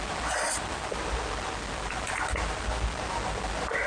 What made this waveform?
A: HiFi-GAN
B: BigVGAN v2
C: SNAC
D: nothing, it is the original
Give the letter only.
D